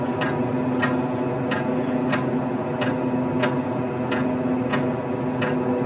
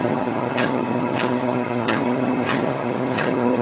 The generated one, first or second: second